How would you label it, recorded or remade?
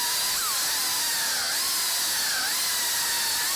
recorded